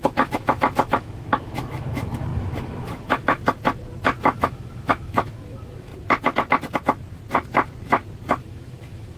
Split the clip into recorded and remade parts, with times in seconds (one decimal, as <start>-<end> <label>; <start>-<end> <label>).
0.0-3.4 remade; 3.4-4.2 recorded; 4.2-5.9 remade; 5.9-8.4 recorded; 8.4-9.2 remade